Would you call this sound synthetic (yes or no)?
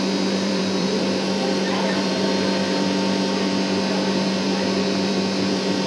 yes